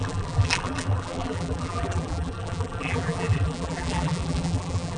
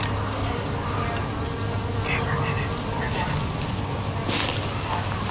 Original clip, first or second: second